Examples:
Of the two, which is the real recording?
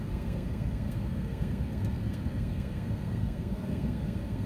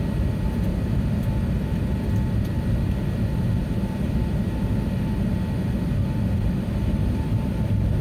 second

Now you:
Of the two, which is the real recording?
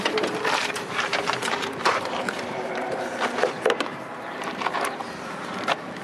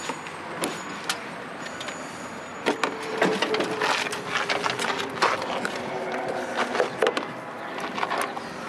second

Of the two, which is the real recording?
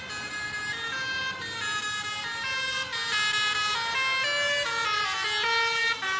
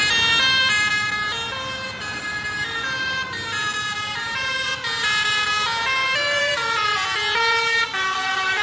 first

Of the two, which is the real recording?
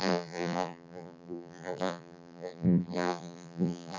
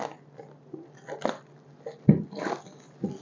second